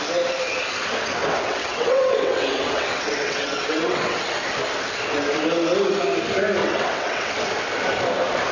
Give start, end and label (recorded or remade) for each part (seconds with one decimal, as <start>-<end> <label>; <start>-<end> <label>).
0.0-1.2 recorded; 1.2-4.2 remade; 4.2-6.6 recorded; 6.6-7.3 remade; 7.3-8.5 recorded